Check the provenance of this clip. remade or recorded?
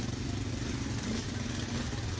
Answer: recorded